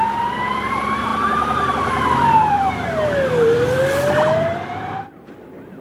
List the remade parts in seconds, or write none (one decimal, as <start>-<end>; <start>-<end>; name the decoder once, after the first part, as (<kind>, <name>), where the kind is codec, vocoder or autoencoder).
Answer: none